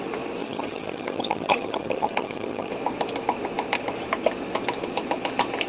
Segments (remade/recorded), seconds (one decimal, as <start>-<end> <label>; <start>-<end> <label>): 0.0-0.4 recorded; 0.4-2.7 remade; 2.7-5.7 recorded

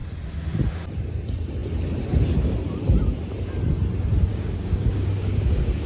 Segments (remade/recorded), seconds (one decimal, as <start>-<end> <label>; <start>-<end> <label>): 0.0-4.3 recorded; 4.3-5.9 remade

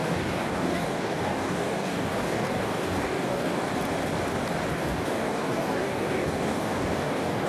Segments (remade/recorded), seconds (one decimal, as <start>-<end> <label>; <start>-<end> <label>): 0.0-3.7 remade; 3.7-4.7 recorded; 4.7-7.5 remade